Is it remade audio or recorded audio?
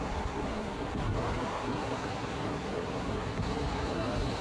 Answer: remade